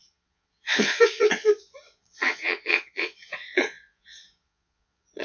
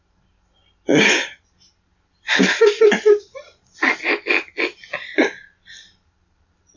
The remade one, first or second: first